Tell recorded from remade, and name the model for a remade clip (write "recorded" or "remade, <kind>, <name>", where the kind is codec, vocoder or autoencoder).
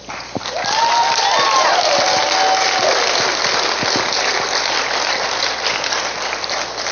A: recorded